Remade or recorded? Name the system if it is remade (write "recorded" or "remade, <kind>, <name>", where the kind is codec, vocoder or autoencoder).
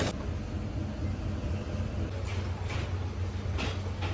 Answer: recorded